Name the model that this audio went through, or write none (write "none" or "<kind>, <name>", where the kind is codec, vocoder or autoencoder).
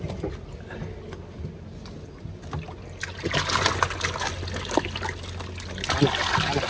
none